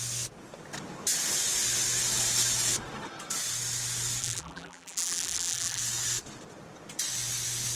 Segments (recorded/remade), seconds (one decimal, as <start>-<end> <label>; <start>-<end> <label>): 0.0-4.2 recorded; 4.2-5.8 remade; 5.8-7.8 recorded